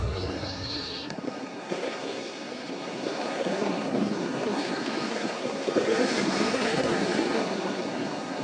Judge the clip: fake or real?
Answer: fake